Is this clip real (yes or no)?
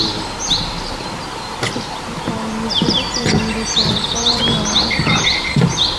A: yes